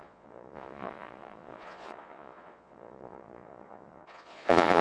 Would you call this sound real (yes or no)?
no